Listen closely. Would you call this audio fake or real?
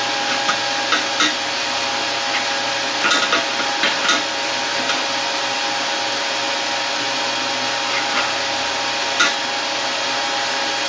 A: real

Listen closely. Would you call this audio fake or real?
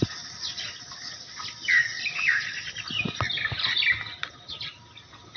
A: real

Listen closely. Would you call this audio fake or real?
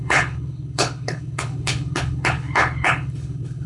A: fake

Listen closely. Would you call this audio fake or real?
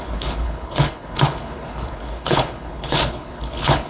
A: fake